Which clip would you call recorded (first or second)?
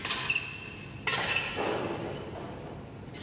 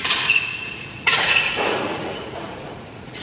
first